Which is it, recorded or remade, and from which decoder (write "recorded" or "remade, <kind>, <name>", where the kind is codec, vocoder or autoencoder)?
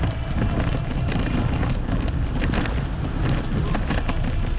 recorded